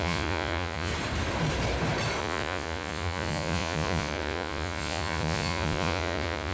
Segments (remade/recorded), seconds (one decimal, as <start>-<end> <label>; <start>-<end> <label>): 0.0-0.9 remade; 0.9-2.2 recorded; 2.2-6.5 remade